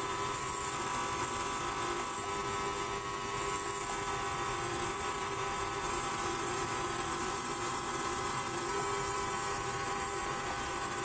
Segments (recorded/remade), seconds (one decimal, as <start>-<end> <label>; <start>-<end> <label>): 0.0-0.5 remade; 0.5-4.7 recorded; 4.7-11.0 remade